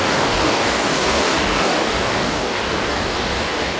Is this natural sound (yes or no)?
no